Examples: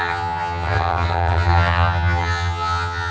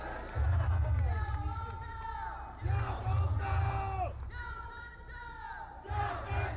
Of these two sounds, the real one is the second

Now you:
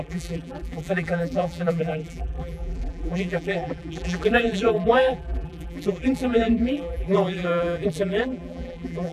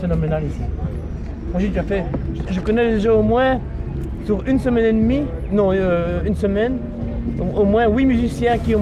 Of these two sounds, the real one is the second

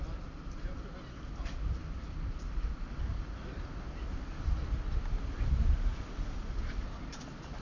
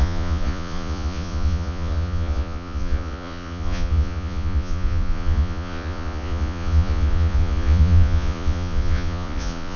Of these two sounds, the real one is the first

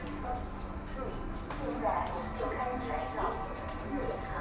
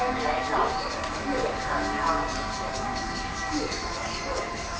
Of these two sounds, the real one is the first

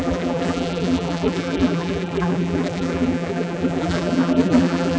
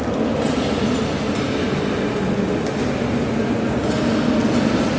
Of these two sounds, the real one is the second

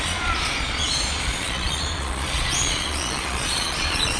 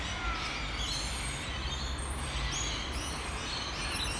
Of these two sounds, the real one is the second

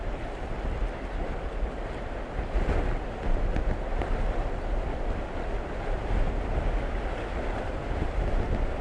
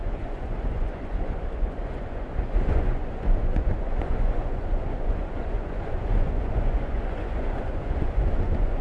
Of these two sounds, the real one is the first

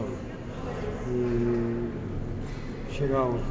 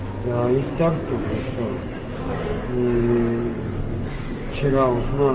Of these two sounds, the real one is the first